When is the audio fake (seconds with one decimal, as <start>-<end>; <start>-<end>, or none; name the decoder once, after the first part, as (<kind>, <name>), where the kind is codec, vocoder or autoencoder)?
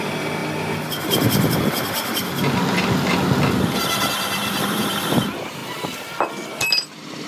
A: 0.0-0.4 (vocoder, BigVGAN v2); 4.1-5.6; 6.8-7.3